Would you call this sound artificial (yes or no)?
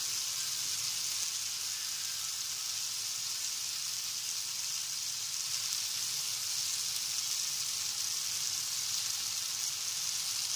no